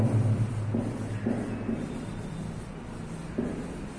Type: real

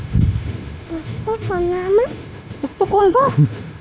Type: fake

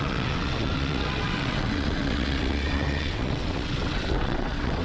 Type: fake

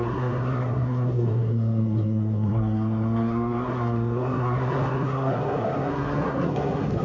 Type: fake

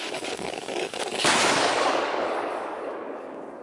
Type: fake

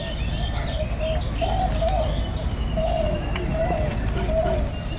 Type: real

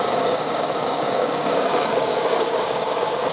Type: fake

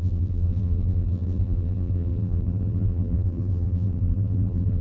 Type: fake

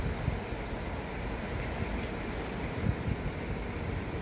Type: real